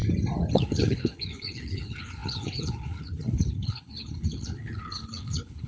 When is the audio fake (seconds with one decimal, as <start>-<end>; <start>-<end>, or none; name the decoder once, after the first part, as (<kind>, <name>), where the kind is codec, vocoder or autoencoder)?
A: 0.5-5.7 (codec, HILCodec)